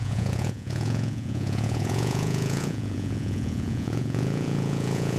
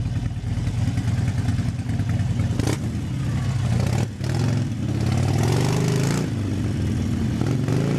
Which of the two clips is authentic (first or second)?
second